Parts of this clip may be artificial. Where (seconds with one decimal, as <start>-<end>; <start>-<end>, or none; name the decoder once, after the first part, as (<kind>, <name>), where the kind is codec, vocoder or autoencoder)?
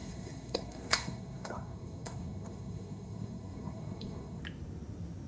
0.0-4.4 (codec, SNAC)